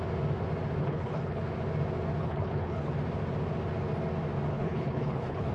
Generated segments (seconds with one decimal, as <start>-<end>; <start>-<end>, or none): 0.8-1.4; 2.2-2.9; 4.5-5.5